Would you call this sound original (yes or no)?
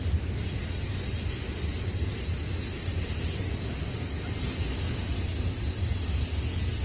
yes